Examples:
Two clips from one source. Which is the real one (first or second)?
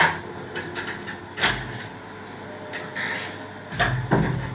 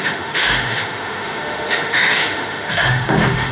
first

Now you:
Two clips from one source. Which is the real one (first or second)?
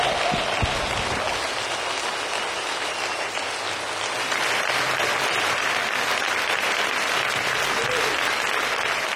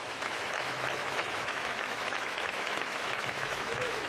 first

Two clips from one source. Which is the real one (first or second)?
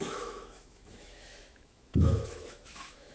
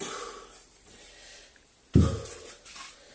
second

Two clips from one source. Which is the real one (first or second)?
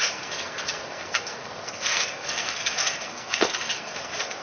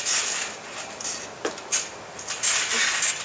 second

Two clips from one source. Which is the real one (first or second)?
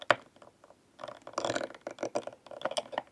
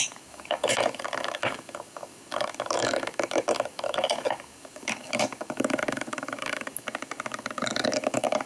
first